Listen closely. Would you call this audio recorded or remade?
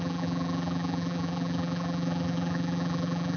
remade